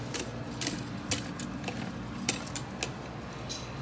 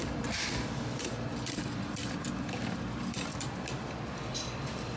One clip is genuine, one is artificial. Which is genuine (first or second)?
first